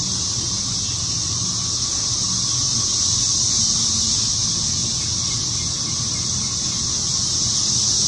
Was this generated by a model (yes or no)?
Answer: no